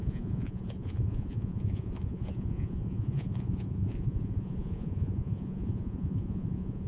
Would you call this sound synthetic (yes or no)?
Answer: yes